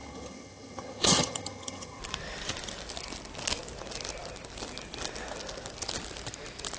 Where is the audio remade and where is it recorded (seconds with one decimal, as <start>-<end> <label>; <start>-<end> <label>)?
0.0-2.0 remade; 2.0-6.8 recorded